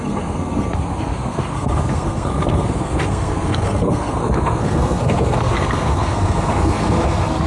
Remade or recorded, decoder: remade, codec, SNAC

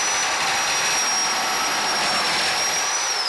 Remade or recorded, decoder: recorded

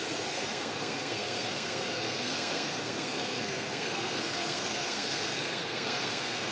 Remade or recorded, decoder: remade, codec, SNAC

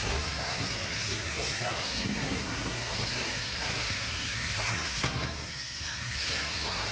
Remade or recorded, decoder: remade, codec, SNAC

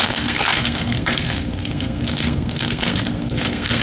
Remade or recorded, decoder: remade, codec, SNAC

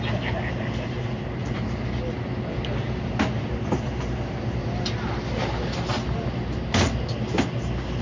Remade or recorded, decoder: recorded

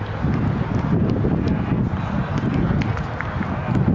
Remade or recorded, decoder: recorded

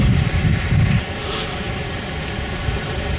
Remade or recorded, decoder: recorded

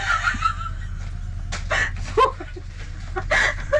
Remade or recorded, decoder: recorded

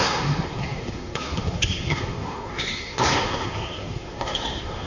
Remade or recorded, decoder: remade, codec, SNAC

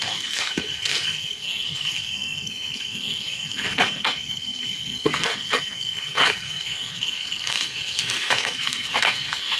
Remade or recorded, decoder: remade, codec, SNAC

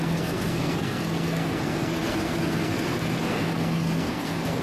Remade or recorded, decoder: remade, codec, SNAC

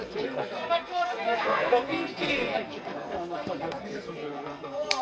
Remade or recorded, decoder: remade, codec, SNAC